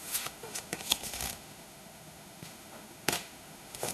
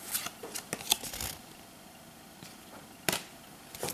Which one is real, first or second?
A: second